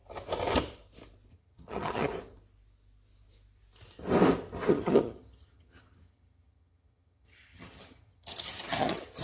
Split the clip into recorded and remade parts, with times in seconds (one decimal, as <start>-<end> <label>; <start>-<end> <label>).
0.0-1.3 recorded; 1.3-2.1 remade; 2.1-4.7 recorded; 4.7-9.2 remade